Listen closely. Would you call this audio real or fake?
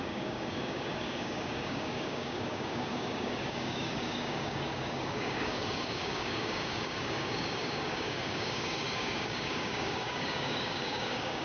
fake